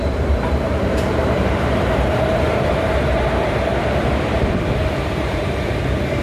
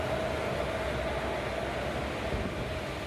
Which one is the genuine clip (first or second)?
second